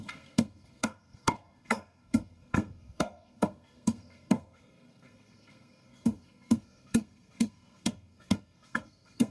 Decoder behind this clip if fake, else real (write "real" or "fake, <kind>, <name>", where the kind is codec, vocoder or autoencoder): fake, codec, SNAC